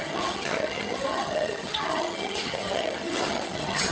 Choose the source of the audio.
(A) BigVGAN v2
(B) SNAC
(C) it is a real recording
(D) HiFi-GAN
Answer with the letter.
D